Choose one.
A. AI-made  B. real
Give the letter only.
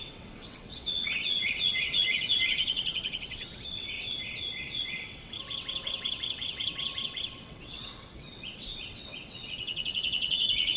A